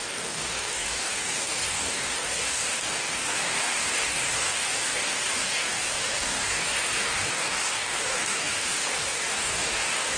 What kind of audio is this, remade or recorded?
remade